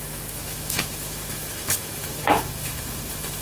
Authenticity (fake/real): fake